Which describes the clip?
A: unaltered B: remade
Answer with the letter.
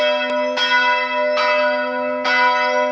A